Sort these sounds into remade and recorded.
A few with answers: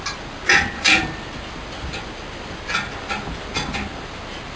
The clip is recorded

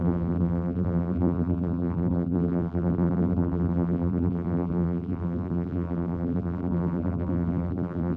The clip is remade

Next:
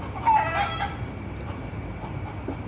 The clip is recorded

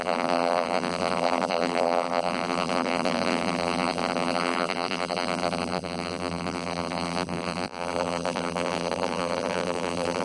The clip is remade